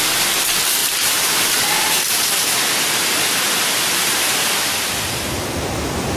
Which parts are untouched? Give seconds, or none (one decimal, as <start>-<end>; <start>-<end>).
0.0-0.8; 4.5-6.2